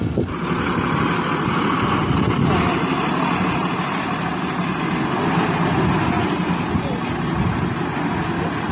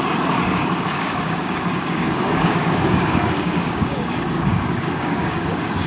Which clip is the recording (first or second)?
first